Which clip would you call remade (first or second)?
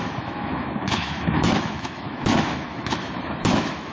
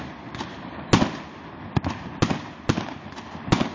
first